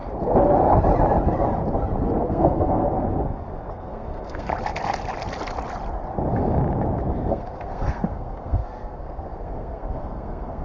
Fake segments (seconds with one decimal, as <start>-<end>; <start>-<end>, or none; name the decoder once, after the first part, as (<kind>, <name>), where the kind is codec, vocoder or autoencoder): 2.3-2.8 (codec, SNAC); 3.7-4.5; 7.3-10.6